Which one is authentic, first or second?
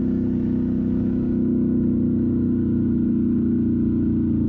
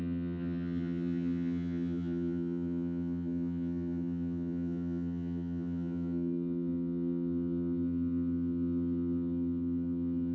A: first